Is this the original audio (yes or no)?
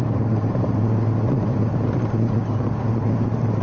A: no